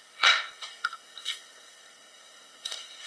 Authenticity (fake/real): fake